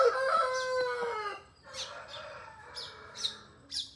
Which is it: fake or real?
real